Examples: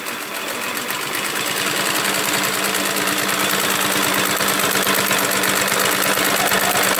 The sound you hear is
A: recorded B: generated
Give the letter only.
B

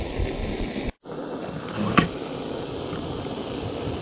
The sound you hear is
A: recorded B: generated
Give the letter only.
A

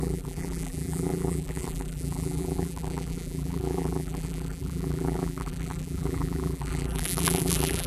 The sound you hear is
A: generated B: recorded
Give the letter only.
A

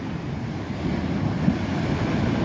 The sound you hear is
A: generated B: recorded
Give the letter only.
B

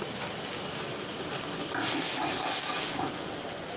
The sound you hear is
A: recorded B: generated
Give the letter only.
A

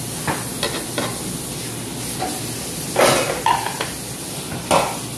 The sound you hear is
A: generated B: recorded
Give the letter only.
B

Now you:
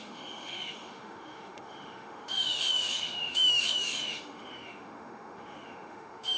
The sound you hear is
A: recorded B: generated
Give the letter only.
B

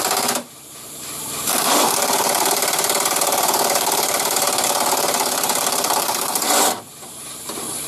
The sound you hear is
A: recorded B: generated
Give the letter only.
B